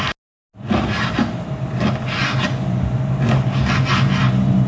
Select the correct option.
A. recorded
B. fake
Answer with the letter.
A